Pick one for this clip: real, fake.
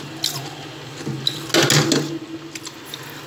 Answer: real